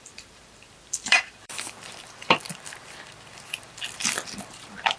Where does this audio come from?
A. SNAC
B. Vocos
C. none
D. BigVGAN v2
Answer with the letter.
D